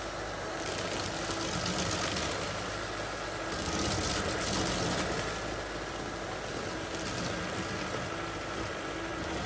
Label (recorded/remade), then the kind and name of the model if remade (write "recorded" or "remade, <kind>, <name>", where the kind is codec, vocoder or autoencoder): recorded